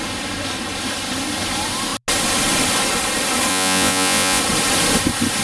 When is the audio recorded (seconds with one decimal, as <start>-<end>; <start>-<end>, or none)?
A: 0.0-3.5; 4.4-5.4